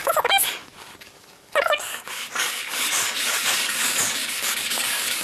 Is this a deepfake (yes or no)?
yes